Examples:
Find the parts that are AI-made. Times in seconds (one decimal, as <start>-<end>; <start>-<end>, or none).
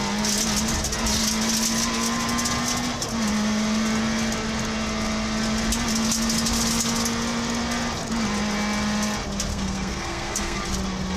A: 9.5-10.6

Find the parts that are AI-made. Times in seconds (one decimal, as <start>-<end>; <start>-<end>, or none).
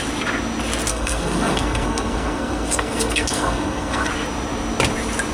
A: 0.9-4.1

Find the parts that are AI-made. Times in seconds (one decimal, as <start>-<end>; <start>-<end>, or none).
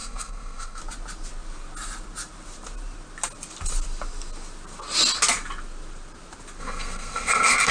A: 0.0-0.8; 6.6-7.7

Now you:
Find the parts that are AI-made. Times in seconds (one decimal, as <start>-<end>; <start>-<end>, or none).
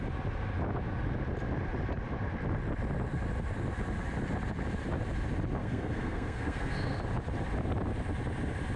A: 5.6-7.0